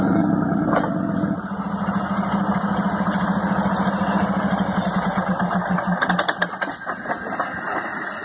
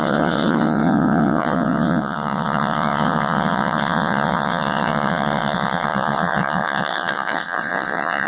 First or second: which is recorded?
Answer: first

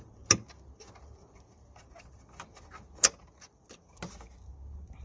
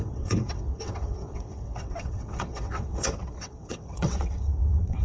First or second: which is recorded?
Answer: first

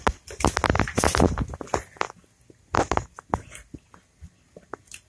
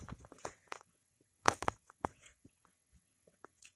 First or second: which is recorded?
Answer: first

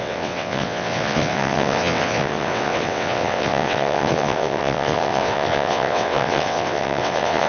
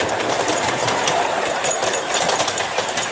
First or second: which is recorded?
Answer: second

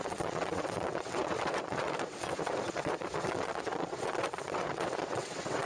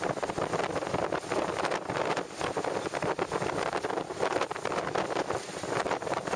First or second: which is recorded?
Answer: second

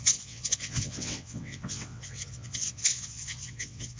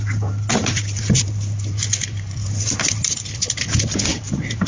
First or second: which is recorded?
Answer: second